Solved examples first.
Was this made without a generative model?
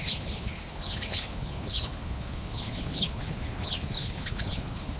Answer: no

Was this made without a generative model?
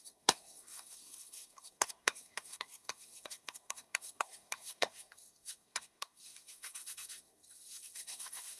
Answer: no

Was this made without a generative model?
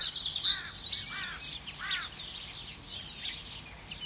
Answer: yes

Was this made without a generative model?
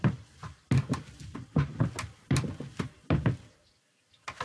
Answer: yes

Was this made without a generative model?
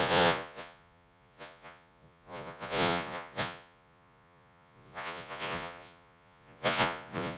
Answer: no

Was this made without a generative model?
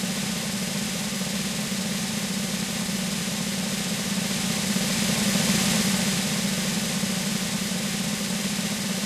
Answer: yes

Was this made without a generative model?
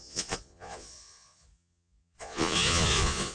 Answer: no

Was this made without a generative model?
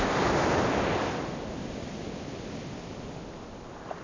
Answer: yes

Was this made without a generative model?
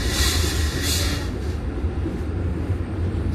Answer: yes